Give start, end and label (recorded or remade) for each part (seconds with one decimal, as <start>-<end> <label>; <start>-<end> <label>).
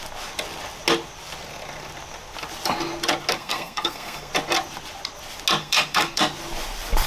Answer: 0.0-3.3 recorded; 3.3-4.3 remade; 4.3-5.6 recorded; 5.6-6.2 remade; 6.2-7.1 recorded